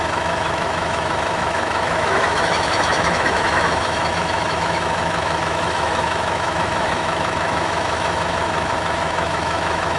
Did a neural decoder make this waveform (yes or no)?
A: yes